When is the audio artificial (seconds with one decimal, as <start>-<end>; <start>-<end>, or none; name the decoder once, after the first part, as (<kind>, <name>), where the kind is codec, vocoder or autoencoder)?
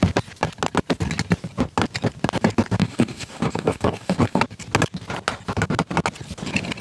2.8-4.4 (codec, DAC)